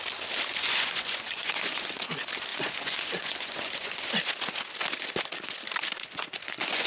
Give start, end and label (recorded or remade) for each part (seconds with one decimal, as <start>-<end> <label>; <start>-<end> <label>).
0.0-0.5 recorded; 0.5-2.0 remade; 2.0-2.5 recorded; 2.5-4.2 remade; 4.2-6.0 recorded; 6.0-6.9 remade